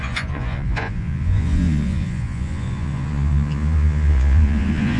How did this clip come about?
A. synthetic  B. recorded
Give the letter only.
A